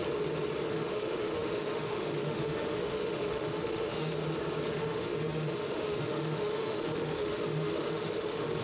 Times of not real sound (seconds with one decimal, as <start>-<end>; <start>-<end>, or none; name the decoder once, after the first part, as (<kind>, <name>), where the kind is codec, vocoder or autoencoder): 0.7-4.1 (autoencoder, DAC-VAE); 4.7-8.6